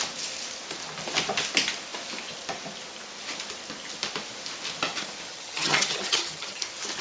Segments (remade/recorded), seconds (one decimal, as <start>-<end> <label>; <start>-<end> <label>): 0.0-5.3 recorded; 5.3-6.6 remade; 6.6-7.0 recorded